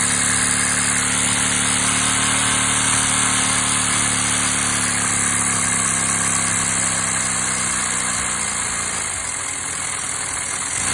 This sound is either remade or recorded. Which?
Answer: recorded